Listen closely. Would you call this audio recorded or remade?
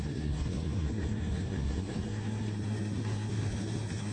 remade